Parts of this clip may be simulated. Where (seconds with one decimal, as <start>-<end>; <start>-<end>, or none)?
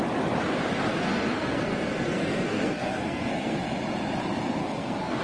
0.9-3.6; 4.6-5.2